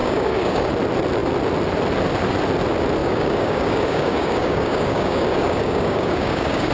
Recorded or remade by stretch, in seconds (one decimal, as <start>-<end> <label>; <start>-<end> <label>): 0.0-0.7 remade; 0.7-3.0 recorded; 3.0-6.7 remade